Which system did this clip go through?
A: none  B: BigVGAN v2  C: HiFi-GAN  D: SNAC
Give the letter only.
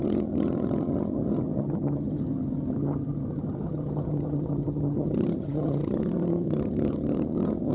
C